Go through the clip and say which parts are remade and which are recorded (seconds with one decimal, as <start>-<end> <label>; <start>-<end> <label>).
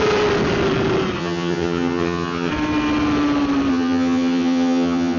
0.0-1.2 recorded; 1.2-2.5 remade; 2.5-3.7 recorded; 3.7-5.2 remade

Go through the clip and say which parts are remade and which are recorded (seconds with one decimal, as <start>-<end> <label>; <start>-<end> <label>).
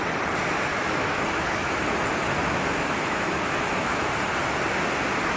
0.0-0.7 recorded; 0.7-1.7 remade; 1.7-2.4 recorded; 2.4-4.1 remade; 4.1-5.4 recorded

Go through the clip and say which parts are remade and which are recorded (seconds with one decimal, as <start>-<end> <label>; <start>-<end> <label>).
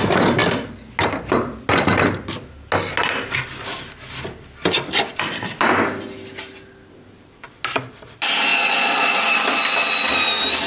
0.0-8.5 recorded; 8.5-9.2 remade; 9.2-10.7 recorded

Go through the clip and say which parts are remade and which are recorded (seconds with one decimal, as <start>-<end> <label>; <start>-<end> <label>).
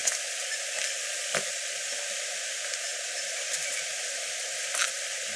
0.0-5.4 recorded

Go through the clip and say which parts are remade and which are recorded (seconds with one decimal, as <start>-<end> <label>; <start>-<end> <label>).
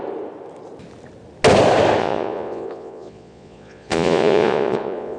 0.0-2.0 recorded; 2.0-5.2 remade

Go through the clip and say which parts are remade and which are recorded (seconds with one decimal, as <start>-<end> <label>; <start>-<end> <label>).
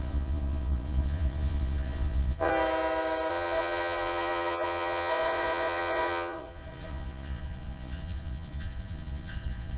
0.0-2.5 remade; 2.5-3.3 recorded; 3.3-9.8 remade